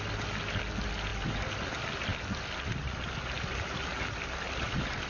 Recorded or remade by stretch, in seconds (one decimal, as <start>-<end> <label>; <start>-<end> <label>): 0.0-5.1 recorded

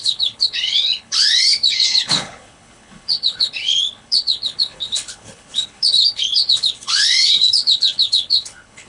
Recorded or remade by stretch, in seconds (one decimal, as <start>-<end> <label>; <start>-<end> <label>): 0.0-8.9 remade

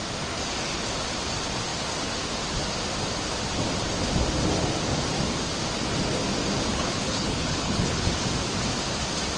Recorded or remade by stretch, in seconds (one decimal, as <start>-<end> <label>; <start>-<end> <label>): 0.0-6.7 recorded; 6.7-8.1 remade; 8.1-9.4 recorded

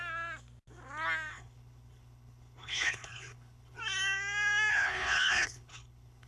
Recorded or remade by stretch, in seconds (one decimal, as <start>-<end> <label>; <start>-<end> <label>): 0.0-1.3 recorded; 1.3-3.8 remade; 3.8-4.7 recorded; 4.7-6.3 remade